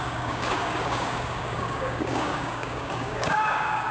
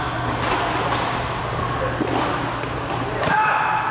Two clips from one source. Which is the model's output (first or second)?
first